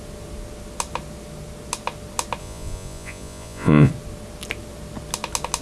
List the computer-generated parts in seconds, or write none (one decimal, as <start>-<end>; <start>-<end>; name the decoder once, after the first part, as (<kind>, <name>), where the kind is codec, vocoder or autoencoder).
2.4-3.9 (vocoder, Vocos)